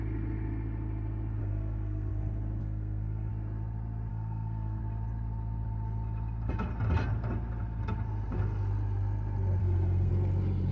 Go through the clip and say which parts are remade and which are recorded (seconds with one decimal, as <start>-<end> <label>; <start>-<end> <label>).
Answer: 0.0-1.4 recorded; 1.4-2.1 remade; 2.1-2.6 recorded; 2.6-3.3 remade; 3.3-4.1 recorded; 4.1-4.8 remade; 4.8-9.6 recorded; 9.6-10.1 remade; 10.1-10.7 recorded